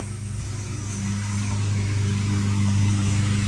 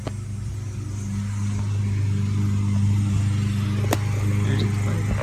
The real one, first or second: second